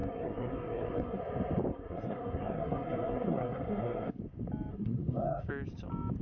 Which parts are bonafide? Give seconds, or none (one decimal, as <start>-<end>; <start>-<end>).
1.2-1.7; 4.2-4.7; 5.5-6.2